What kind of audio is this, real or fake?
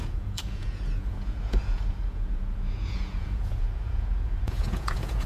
fake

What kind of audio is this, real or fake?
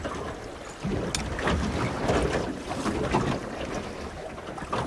real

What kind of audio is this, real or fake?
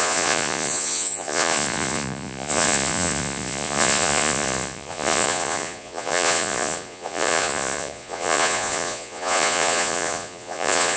fake